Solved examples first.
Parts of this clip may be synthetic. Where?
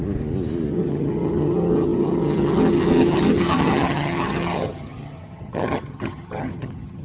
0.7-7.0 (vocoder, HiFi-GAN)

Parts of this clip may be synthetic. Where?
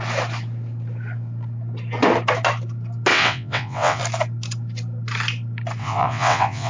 3.1-4.0 (vocoder, WaveNeXt); 5.8-6.7